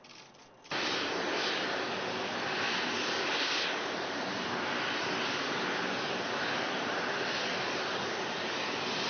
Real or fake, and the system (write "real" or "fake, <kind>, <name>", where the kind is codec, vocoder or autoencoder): real